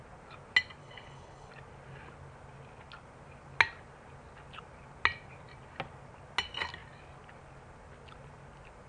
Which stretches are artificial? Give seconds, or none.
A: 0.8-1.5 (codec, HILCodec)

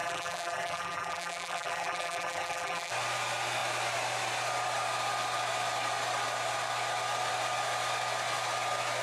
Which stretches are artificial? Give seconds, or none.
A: 0.0-2.9 (vocoder, BigVGAN v2)